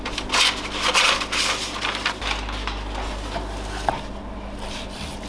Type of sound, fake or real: real